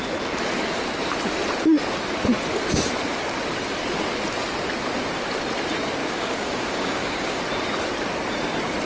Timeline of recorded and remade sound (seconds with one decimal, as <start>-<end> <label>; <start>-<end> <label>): 0.0-6.0 recorded; 6.0-7.4 remade; 7.4-8.9 recorded